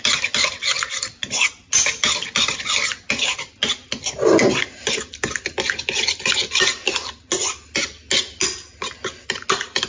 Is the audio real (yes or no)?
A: yes